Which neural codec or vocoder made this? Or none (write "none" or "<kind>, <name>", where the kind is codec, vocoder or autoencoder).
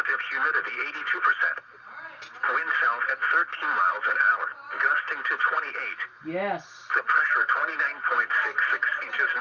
none